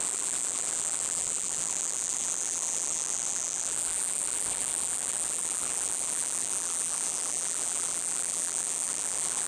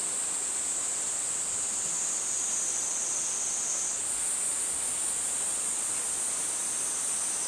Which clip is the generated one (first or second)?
first